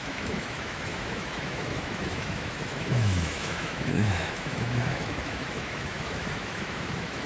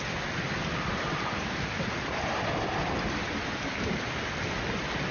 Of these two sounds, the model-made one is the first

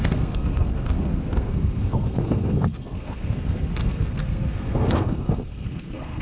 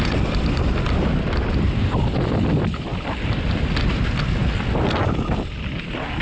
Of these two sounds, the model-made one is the first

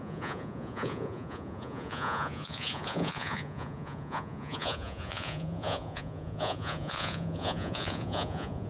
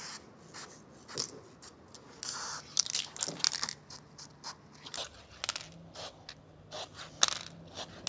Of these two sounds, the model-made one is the first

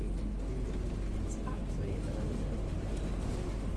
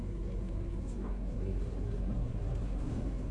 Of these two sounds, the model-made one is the second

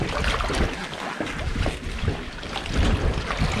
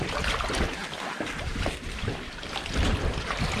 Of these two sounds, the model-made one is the second